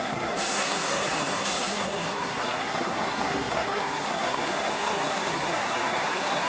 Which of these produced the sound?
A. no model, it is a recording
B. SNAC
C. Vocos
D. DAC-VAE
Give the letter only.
B